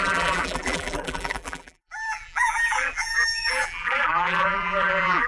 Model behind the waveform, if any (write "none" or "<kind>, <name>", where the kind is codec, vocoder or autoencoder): vocoder, BigVGAN v2